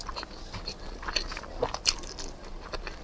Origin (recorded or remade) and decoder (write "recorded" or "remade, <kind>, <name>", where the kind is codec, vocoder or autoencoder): recorded